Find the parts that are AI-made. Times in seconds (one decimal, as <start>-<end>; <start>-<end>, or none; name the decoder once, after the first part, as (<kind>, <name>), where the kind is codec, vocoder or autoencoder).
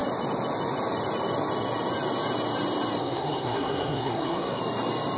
3.0-4.6 (codec, SNAC)